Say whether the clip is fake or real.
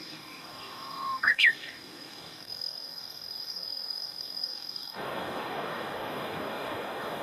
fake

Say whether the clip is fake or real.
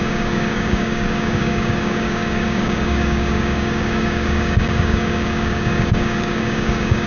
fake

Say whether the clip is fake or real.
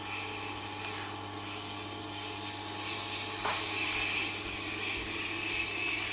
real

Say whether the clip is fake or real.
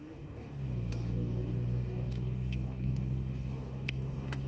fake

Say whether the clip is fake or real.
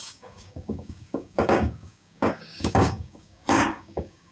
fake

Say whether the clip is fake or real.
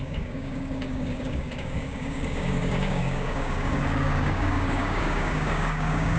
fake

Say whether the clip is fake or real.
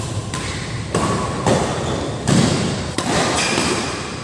real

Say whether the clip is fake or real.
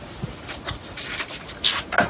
real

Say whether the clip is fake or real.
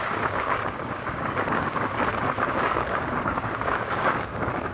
fake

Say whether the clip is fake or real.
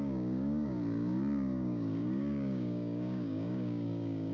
fake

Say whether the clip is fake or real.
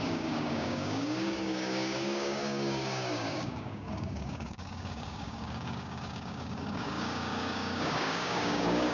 fake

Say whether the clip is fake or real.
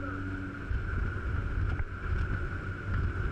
real